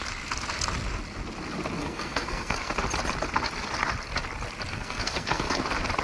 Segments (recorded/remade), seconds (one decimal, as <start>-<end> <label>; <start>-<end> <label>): 0.0-1.8 recorded; 1.8-2.7 remade; 2.7-4.7 recorded; 4.7-5.6 remade; 5.6-6.0 recorded